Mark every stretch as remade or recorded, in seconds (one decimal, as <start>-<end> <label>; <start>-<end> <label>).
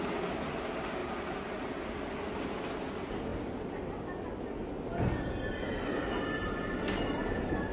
0.0-7.7 recorded